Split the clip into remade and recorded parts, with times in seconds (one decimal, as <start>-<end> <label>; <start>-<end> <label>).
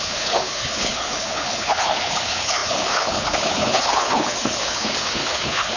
0.0-5.8 remade